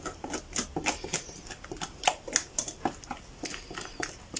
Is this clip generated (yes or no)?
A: no